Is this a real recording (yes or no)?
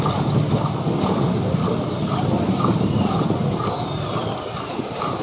yes